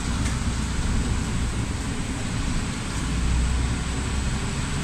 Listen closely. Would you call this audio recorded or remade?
recorded